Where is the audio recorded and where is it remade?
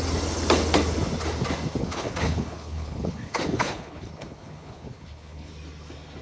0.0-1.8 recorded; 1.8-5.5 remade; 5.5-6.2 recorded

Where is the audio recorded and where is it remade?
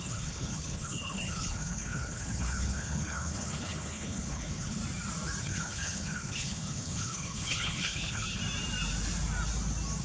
0.0-4.8 remade; 4.8-5.4 recorded; 5.4-8.4 remade; 8.4-10.0 recorded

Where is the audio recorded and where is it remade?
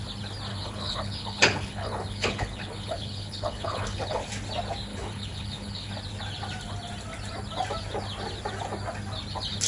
0.0-0.5 recorded; 0.5-4.2 remade; 4.2-4.9 recorded; 4.9-5.9 remade; 5.9-9.7 recorded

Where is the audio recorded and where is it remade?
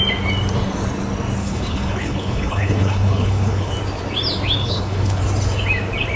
0.0-1.4 recorded; 1.4-3.7 remade; 3.7-4.6 recorded; 4.6-5.2 remade; 5.2-6.2 recorded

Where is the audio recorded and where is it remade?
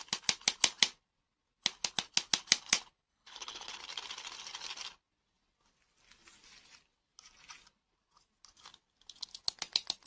0.0-3.1 recorded; 3.1-3.8 remade; 3.8-10.1 recorded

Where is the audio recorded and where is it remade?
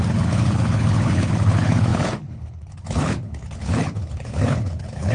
0.0-5.1 remade